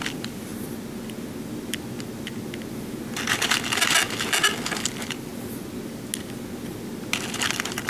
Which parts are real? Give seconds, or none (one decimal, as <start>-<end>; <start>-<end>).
0.5-3.3; 5.3-7.5